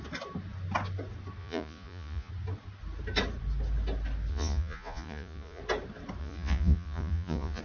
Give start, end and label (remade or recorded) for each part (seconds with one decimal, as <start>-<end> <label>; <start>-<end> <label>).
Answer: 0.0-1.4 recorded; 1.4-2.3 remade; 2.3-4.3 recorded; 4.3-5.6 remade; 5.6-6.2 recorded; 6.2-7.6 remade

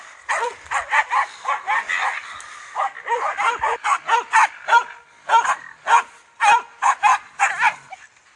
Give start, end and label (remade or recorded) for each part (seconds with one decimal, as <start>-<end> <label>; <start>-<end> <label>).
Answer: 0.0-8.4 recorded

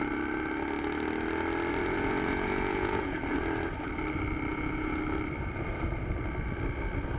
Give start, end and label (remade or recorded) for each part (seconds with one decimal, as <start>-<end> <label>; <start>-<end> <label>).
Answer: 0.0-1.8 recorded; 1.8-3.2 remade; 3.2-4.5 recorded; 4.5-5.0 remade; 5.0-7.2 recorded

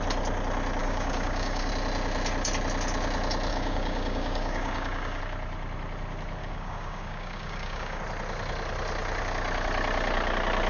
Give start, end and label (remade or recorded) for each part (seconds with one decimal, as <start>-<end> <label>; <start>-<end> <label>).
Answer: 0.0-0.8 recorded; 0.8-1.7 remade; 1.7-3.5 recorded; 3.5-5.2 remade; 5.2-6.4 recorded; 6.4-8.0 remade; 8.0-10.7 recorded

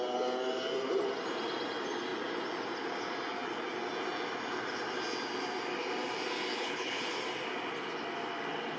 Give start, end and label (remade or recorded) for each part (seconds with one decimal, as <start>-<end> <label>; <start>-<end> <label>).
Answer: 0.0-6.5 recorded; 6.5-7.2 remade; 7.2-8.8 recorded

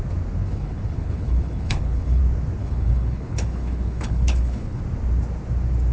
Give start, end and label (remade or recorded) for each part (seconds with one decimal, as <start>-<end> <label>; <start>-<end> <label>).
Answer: 0.0-0.4 recorded; 0.4-2.2 remade; 2.2-2.6 recorded; 2.6-4.8 remade; 4.8-5.9 recorded